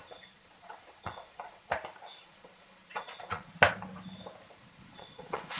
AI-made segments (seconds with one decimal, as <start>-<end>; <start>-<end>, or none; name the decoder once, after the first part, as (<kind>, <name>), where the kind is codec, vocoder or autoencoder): 0.0-1.7 (vocoder, Vocos); 2.2-3.5; 4.5-5.6